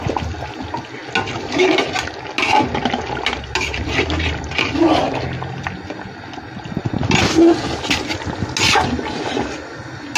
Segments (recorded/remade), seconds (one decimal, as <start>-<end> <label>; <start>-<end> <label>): 0.0-10.2 recorded